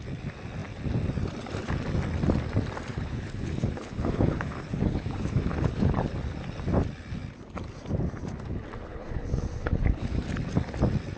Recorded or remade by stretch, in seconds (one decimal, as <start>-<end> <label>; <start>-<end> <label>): 0.0-2.9 recorded; 2.9-6.0 remade; 6.0-8.9 recorded; 8.9-10.2 remade; 10.2-11.2 recorded